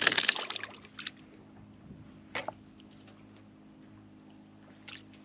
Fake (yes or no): no